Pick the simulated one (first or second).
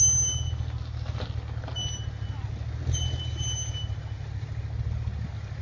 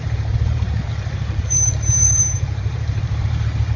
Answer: second